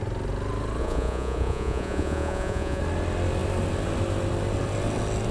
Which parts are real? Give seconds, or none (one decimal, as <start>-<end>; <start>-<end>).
0.0-0.8; 2.8-5.3